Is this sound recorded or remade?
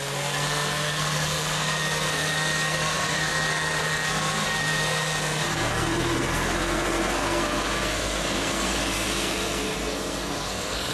remade